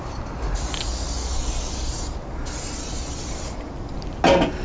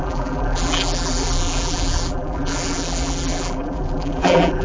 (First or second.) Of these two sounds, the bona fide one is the first